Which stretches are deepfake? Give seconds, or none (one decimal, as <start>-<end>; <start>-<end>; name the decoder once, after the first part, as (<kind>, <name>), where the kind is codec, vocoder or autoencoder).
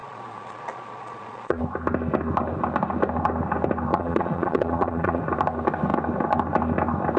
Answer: 0.0-1.6 (vocoder, Vocos); 3.9-5.2